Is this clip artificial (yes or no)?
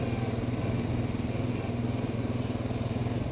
no